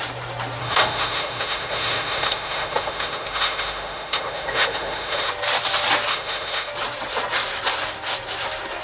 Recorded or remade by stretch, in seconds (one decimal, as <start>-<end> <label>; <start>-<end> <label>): 0.0-0.6 recorded; 0.6-5.3 remade; 5.3-6.1 recorded; 6.1-6.7 remade; 6.7-8.8 recorded